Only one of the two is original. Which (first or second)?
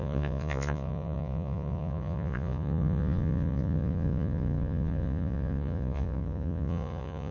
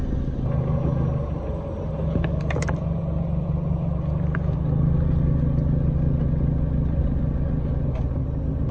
second